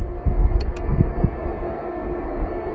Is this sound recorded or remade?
remade